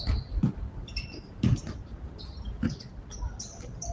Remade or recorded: recorded